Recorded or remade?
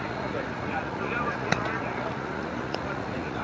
remade